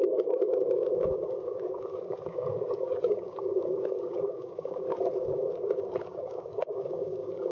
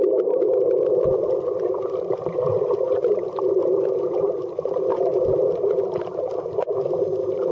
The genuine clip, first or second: second